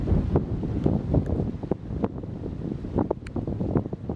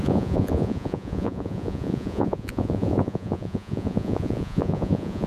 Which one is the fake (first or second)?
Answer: second